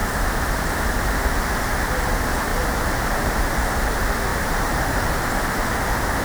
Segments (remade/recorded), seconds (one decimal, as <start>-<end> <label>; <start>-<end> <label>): 0.0-4.3 recorded; 4.3-5.1 remade; 5.1-6.2 recorded